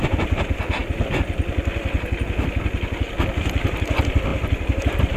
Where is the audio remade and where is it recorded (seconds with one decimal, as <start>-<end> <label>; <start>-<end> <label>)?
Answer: 0.0-5.2 recorded